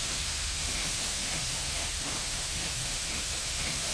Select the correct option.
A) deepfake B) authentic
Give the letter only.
A